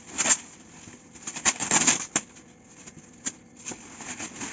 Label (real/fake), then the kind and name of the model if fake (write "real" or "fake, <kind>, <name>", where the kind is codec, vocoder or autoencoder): real